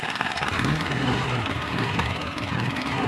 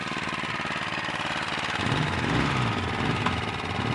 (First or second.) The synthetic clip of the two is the first